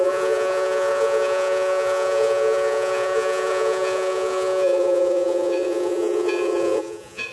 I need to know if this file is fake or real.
fake